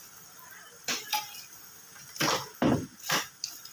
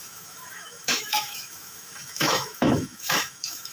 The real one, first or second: first